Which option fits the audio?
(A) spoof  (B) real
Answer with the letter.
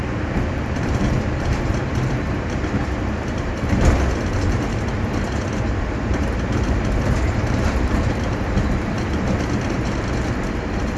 A